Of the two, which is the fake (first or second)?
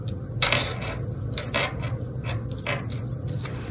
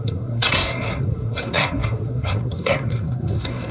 second